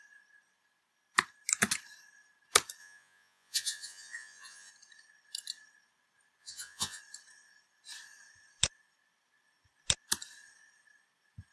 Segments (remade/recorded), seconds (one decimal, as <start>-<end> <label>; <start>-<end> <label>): 0.0-2.8 recorded; 2.8-4.7 remade; 4.7-6.4 recorded; 6.4-7.0 remade; 7.0-11.5 recorded